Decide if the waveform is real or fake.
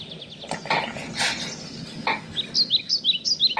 real